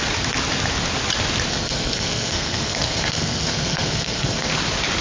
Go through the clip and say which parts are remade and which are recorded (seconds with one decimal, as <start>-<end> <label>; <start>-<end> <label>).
0.0-1.5 recorded; 1.5-4.5 remade; 4.5-5.0 recorded